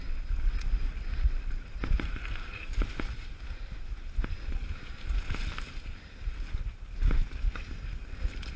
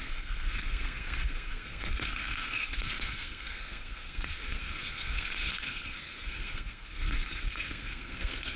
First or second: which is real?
first